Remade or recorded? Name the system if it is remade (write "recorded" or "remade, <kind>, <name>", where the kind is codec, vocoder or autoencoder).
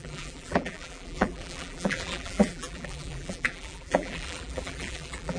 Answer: remade, vocoder, BigVGAN v2